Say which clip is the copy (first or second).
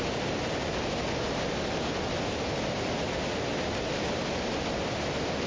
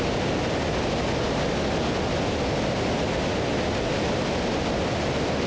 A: first